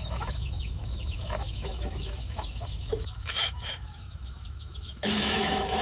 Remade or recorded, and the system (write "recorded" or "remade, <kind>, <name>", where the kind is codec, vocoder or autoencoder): remade, autoencoder, DAC-VAE